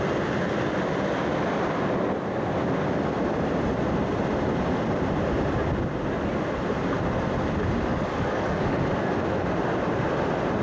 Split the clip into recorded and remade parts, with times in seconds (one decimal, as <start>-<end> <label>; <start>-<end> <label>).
0.0-7.9 recorded; 7.9-8.8 remade; 8.8-10.6 recorded